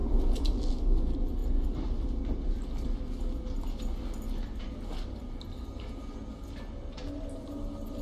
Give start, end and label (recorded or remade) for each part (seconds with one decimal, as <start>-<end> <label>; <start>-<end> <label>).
0.0-8.0 recorded